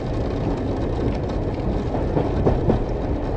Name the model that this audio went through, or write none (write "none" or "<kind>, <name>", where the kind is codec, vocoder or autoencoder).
none